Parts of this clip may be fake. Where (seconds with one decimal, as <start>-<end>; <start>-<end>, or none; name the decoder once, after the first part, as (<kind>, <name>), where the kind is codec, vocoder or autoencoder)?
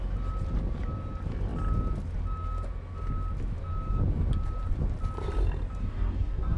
5.8-6.6 (codec, DAC)